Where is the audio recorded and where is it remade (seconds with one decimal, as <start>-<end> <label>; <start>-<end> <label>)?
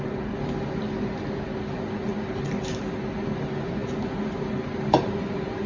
0.0-5.7 recorded